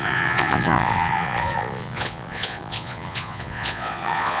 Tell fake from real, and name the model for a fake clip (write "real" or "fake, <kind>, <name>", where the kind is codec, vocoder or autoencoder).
fake, vocoder, Vocos